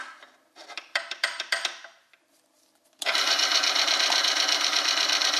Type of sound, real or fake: fake